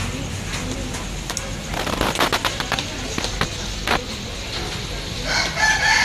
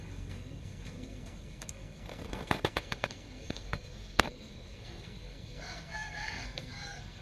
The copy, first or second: second